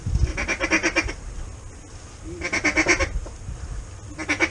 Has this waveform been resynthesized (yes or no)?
no